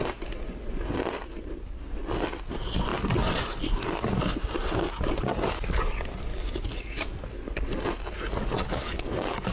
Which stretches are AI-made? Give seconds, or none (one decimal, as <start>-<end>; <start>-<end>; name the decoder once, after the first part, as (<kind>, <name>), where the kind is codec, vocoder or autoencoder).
6.3-7.2 (codec, DAC); 8.4-9.5